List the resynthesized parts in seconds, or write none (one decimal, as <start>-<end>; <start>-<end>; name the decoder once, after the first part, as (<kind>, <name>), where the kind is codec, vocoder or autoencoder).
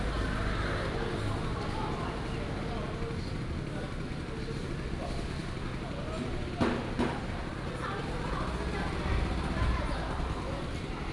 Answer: none